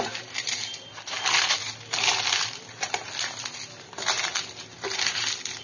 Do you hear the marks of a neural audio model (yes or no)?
no